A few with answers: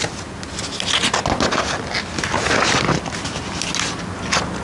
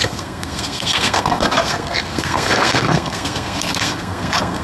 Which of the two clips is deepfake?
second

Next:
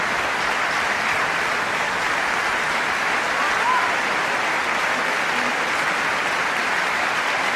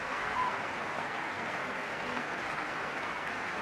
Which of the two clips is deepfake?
second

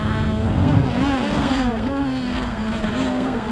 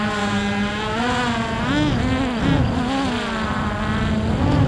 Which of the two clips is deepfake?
first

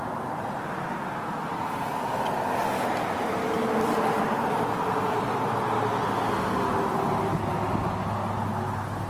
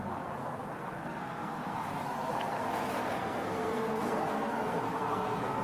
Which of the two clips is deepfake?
second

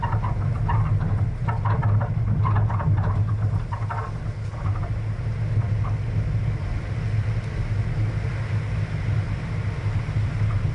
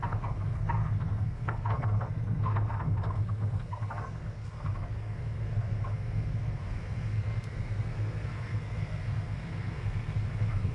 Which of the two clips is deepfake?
second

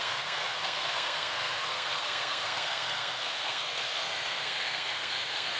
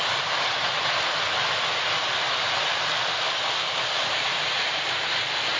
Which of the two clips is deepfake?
first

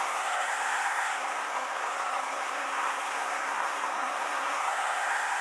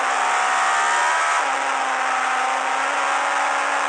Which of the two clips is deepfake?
first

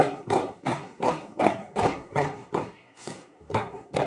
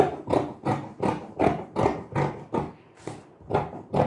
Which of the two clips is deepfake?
first